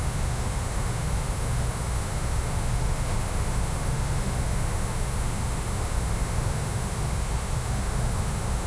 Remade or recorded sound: remade